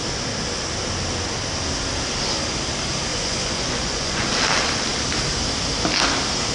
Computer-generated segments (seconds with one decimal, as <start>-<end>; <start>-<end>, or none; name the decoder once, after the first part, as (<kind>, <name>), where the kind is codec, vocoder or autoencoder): 3.1-4.3 (vocoder, Vocos)